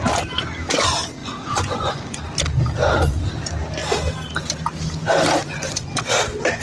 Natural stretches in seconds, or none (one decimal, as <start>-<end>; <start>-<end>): 0.0-1.2; 2.2-2.8; 3.3-5.4; 5.9-6.6